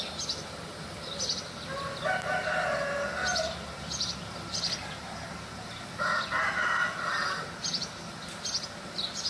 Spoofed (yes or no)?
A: no